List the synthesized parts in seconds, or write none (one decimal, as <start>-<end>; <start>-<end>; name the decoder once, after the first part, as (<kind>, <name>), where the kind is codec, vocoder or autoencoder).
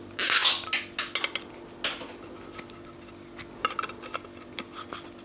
none